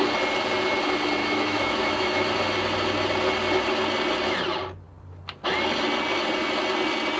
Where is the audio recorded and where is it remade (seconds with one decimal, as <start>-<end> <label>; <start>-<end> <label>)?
0.0-1.2 recorded; 1.2-2.2 remade; 2.2-7.2 recorded